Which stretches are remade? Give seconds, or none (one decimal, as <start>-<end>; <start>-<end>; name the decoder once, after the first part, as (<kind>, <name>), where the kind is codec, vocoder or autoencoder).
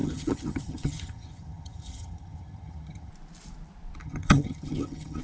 0.0-3.1 (vocoder, HiFi-GAN); 4.0-5.2